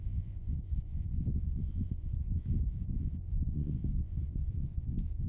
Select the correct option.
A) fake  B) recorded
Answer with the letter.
A